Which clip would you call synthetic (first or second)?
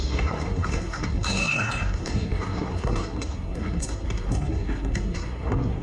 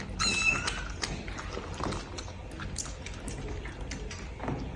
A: first